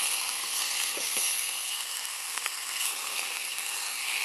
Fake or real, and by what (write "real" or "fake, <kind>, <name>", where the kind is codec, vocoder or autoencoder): fake, codec, SNAC